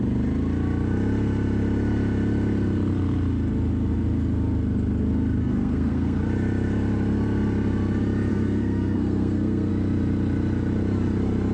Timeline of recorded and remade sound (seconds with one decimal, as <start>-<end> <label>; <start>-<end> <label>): 0.0-5.4 recorded; 5.4-6.2 remade; 6.2-8.3 recorded; 8.3-9.7 remade; 9.7-11.5 recorded